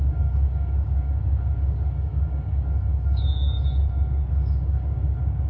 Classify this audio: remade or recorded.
remade